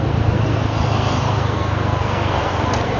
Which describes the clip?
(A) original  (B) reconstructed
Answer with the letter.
B